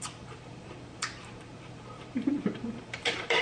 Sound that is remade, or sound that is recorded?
remade